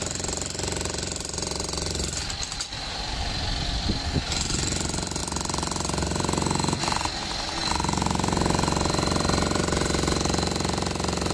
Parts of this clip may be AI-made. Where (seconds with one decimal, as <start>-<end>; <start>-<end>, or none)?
none